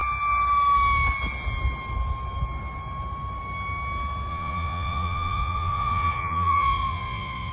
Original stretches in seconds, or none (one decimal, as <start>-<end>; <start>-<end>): 0.0-4.3